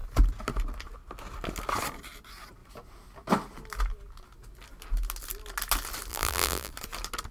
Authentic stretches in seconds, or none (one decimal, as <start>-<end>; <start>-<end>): 0.0-6.1; 6.7-7.3